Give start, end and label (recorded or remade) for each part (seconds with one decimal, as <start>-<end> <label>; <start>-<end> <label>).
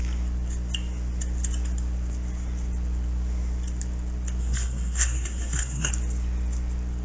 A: 0.0-4.4 recorded; 4.4-5.9 remade; 5.9-7.0 recorded